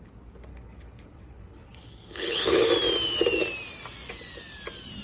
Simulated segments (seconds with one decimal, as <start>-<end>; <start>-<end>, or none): 0.5-2.7